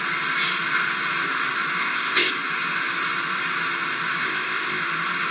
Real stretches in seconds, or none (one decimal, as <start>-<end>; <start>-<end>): 0.0-1.8; 2.3-4.2; 4.8-5.3